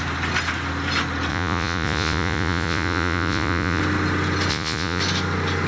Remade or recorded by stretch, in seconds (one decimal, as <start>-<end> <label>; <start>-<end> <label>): 0.0-1.3 recorded; 1.3-3.8 remade; 3.8-4.5 recorded; 4.5-5.0 remade; 5.0-5.7 recorded